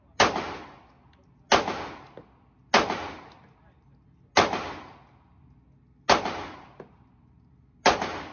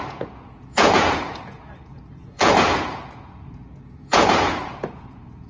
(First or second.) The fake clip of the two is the second